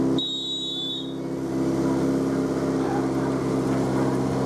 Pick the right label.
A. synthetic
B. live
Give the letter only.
B